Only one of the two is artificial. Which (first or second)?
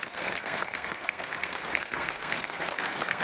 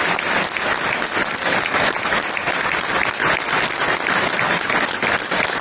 first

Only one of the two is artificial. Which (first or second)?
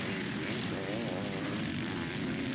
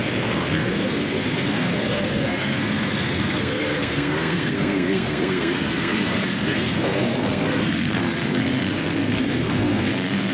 second